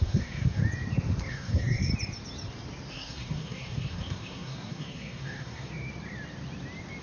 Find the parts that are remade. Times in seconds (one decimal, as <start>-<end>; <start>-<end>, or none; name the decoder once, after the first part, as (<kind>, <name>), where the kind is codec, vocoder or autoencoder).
0.0-0.6 (codec, SNAC); 1.3-1.9; 2.9-5.7